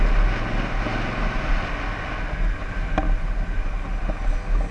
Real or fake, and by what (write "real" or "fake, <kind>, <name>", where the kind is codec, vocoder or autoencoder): real